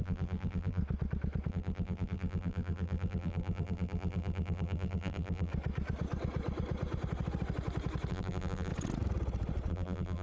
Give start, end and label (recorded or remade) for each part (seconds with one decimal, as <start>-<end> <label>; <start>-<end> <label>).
0.0-0.8 remade; 0.8-1.5 recorded; 1.5-5.5 remade; 5.5-8.1 recorded; 8.1-8.7 remade; 8.7-9.7 recorded; 9.7-10.2 remade